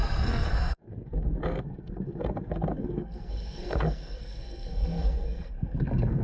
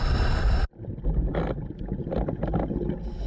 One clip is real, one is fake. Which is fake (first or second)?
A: first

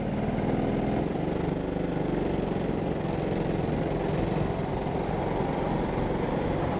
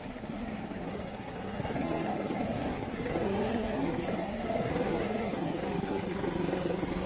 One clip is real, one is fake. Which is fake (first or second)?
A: second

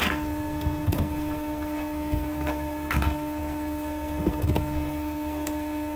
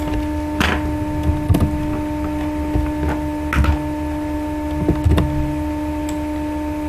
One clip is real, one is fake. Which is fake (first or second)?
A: first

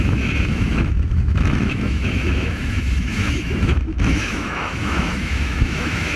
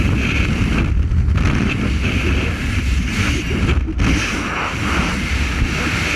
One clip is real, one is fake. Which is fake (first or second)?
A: first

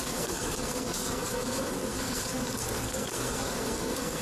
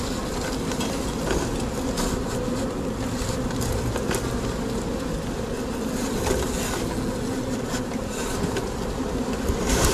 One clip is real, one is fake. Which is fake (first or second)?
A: first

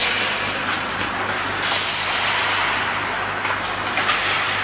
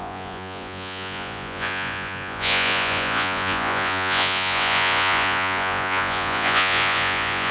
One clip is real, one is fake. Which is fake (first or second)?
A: second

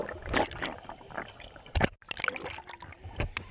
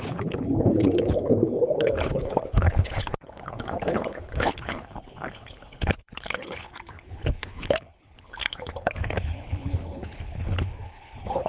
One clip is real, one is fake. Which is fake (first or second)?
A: second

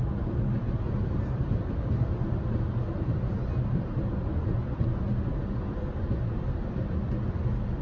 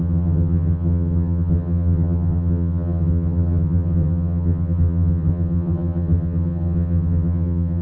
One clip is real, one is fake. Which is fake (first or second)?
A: second